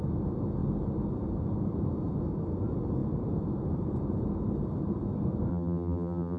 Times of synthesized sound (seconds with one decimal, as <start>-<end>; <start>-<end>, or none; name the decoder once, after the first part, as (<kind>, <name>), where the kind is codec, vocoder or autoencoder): 5.5-6.4 (vocoder, BigVGAN v2)